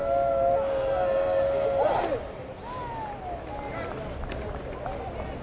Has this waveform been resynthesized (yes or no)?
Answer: no